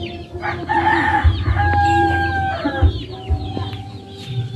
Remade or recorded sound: recorded